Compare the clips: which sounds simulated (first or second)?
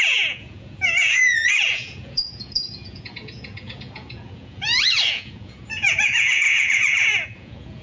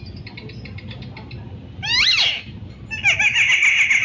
first